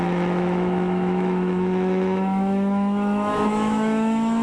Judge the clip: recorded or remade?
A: remade